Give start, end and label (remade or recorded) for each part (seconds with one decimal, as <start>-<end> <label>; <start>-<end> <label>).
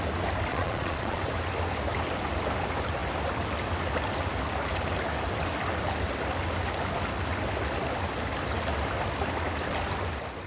0.0-0.5 recorded; 0.5-1.2 remade; 1.2-10.5 recorded